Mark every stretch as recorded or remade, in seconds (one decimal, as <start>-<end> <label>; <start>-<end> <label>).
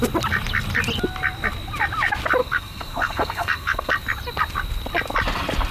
0.0-2.4 recorded; 2.4-3.9 remade; 3.9-5.7 recorded